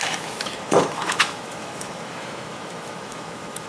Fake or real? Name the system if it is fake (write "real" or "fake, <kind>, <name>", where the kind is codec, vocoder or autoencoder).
fake, autoencoder, DAC-VAE